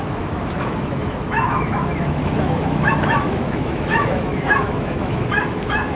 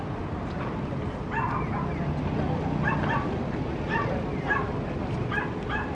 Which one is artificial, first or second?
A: first